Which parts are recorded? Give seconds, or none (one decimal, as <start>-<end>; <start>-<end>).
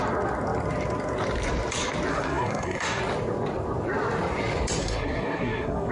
0.0-2.1; 3.0-4.8